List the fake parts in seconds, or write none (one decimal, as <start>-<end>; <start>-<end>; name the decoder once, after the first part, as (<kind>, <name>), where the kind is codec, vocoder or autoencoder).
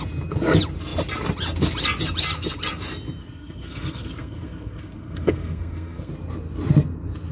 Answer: 3.2-6.1 (codec, SNAC)